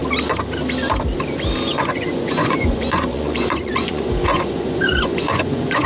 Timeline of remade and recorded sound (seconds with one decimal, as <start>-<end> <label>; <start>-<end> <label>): 0.0-1.7 recorded; 1.7-5.9 remade